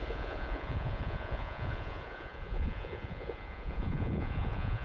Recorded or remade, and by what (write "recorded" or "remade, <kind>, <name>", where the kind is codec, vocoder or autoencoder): remade, vocoder, Vocos